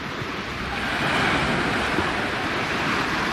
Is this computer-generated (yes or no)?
no